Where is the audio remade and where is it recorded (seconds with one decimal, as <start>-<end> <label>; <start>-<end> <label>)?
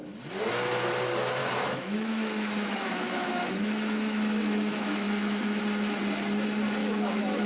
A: 0.0-1.4 recorded; 1.4-5.6 remade; 5.6-6.8 recorded; 6.8-7.5 remade